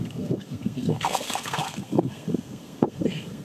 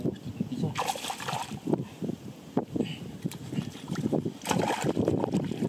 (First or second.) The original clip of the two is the second